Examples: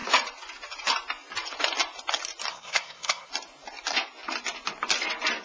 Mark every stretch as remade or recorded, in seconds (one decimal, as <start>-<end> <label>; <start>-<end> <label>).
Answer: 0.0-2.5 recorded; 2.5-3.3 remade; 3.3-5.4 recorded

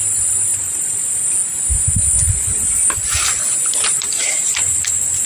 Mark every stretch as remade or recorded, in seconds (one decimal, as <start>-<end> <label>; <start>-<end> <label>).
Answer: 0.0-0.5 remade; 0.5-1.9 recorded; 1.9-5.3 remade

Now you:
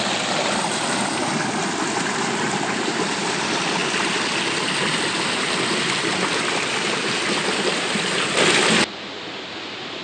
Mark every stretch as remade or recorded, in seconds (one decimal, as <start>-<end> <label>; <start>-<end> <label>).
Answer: 0.0-10.0 recorded